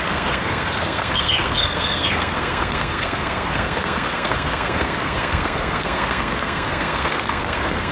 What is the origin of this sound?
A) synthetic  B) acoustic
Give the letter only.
A